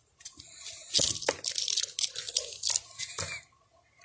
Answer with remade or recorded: recorded